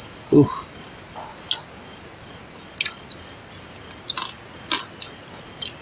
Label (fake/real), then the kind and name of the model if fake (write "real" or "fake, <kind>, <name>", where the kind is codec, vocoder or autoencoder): real